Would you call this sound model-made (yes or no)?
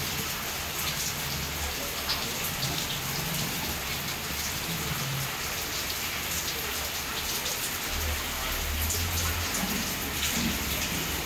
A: no